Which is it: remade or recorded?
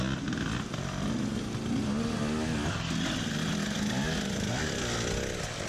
recorded